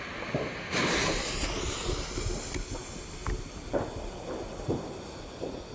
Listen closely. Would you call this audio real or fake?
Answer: real